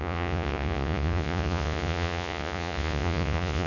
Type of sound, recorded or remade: remade